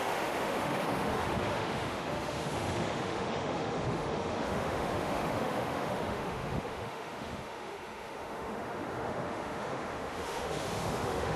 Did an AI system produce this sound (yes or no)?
yes